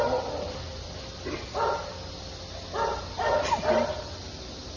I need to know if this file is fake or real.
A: real